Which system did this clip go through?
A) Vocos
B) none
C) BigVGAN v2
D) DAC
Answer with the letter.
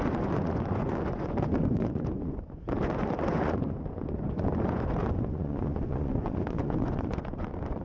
A